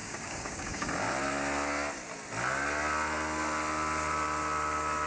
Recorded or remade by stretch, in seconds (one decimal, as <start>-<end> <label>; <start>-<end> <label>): 0.0-0.9 remade; 0.9-5.1 recorded